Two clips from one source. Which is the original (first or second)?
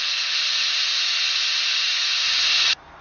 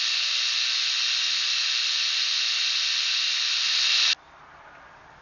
second